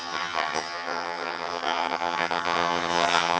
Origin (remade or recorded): remade